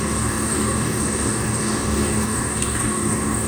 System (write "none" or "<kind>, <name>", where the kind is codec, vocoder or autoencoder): codec, DAC